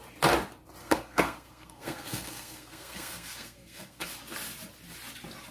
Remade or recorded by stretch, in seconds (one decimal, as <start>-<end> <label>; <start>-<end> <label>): 0.0-0.8 recorded; 0.8-4.1 remade; 4.1-5.5 recorded

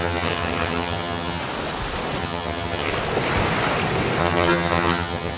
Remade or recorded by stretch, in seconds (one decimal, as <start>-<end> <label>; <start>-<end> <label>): 0.0-1.4 remade; 1.4-2.2 recorded; 2.2-2.9 remade; 2.9-4.2 recorded; 4.2-5.4 remade

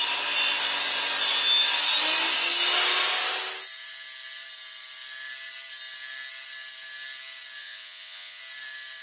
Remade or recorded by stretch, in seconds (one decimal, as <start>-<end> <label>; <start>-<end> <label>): 0.0-7.6 recorded; 7.6-8.4 remade; 8.4-9.0 recorded

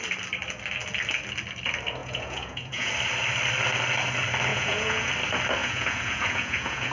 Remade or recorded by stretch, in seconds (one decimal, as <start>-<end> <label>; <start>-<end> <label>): 0.0-2.0 recorded; 2.0-2.9 remade; 2.9-4.5 recorded; 4.5-5.1 remade; 5.1-5.6 recorded; 5.6-6.9 remade

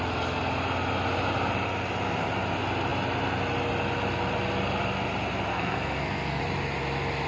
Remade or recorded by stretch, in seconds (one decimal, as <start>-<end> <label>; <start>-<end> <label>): 0.0-5.5 recorded; 5.5-6.4 remade; 6.4-7.3 recorded

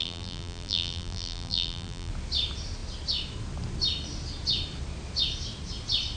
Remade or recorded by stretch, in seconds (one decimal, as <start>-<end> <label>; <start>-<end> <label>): 0.0-2.1 remade; 2.1-6.2 recorded

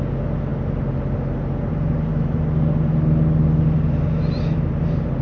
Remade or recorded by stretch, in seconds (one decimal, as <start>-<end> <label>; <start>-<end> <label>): 0.0-5.2 recorded

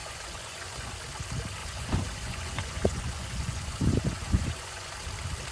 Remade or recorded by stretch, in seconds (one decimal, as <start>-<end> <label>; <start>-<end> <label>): 0.0-0.9 remade; 0.9-1.6 recorded; 1.6-4.9 remade; 4.9-5.5 recorded